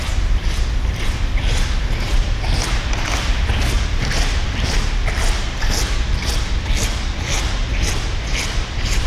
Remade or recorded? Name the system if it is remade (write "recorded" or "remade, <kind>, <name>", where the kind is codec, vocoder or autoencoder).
remade, vocoder, BigVGAN v2